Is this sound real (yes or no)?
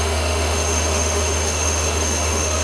no